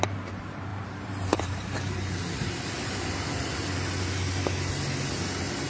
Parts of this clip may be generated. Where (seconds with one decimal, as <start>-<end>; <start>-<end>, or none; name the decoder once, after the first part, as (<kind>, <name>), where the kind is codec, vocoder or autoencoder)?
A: 0.0-2.2 (vocoder, BigVGAN v2)

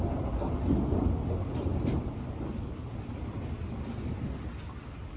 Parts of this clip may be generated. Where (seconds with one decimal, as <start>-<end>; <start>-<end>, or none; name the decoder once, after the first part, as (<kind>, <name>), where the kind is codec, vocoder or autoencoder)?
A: none